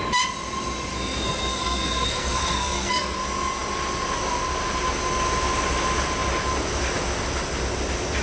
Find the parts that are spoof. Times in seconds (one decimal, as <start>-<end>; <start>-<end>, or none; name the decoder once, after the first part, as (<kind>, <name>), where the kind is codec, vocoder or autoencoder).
0.9-3.2 (codec, SNAC)